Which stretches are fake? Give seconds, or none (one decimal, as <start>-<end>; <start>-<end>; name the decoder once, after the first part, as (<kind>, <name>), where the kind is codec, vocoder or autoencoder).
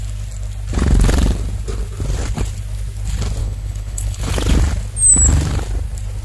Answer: 3.4-4.3 (codec, HILCodec)